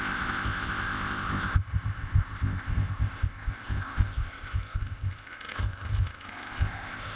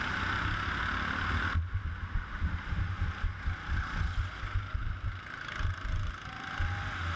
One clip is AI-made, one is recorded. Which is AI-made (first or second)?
first